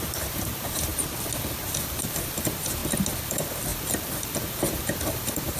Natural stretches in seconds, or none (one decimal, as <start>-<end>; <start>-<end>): 0.9-1.6; 2.8-3.3